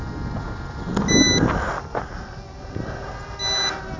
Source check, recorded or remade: recorded